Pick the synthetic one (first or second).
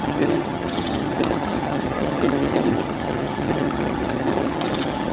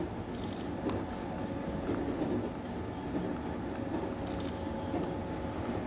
first